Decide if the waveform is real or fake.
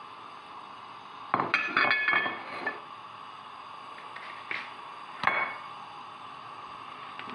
real